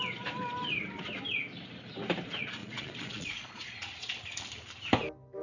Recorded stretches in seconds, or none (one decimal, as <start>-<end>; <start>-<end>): 0.0-2.6; 4.2-5.4